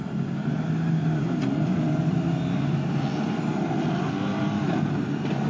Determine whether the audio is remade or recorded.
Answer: recorded